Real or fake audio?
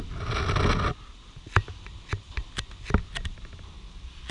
real